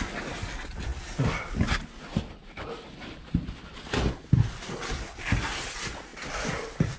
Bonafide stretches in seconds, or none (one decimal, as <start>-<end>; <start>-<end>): 0.0-7.0